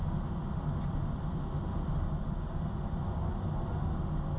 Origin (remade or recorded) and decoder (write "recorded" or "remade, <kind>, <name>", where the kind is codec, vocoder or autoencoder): recorded